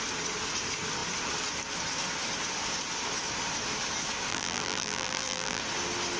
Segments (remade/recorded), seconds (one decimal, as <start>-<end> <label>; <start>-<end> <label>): 0.0-4.3 recorded; 4.3-5.6 remade; 5.6-6.2 recorded